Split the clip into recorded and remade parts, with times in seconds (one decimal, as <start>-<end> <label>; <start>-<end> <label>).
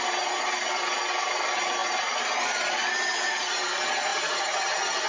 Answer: 0.0-5.1 recorded